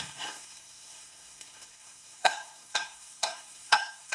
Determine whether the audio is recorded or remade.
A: remade